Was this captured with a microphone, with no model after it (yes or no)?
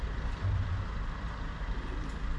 yes